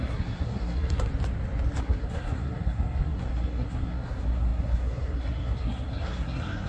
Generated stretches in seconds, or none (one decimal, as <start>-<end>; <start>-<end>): 0.0-1.1; 1.8-6.7